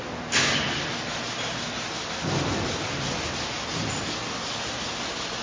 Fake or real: real